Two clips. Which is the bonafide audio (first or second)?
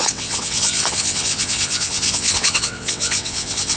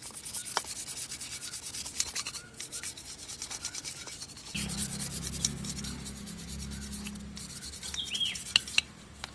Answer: second